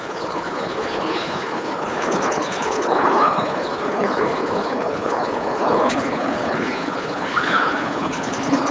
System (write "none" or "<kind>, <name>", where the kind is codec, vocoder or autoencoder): codec, HILCodec